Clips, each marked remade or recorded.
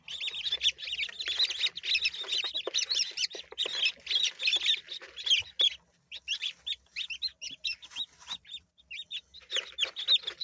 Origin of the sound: recorded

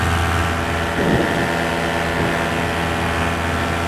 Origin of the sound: recorded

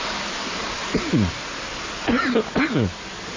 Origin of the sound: recorded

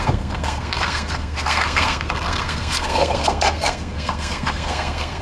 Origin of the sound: remade